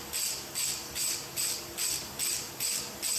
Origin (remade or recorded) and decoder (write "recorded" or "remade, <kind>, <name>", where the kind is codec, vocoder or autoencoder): recorded